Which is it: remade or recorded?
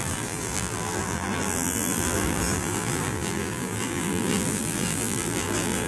remade